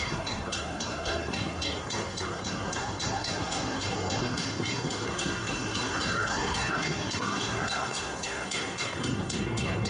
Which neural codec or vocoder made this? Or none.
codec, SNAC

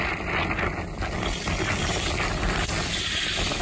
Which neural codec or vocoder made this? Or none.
none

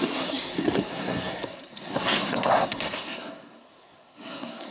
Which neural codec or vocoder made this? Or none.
codec, SNAC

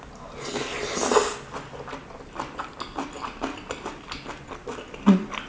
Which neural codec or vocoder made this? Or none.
none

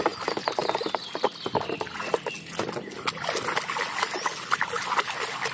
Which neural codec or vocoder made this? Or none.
none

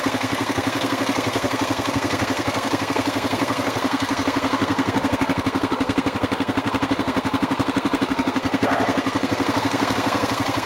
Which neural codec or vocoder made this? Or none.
codec, SNAC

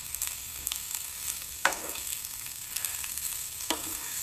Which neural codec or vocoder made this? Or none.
codec, SNAC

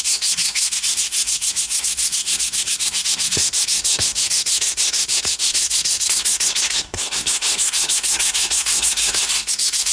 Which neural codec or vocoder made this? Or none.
codec, SNAC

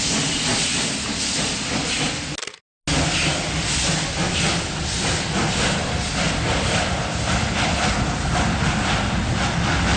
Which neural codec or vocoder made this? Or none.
none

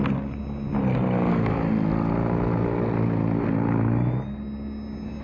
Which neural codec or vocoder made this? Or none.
none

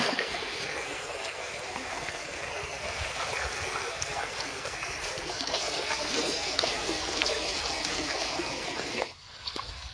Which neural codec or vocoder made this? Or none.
codec, SNAC